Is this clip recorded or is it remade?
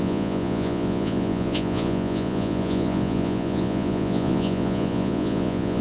remade